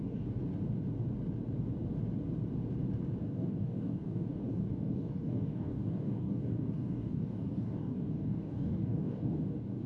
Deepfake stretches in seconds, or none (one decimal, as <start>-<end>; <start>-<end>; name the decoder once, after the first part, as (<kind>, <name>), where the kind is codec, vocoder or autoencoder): 0.0-0.4 (codec, DAC); 3.2-9.9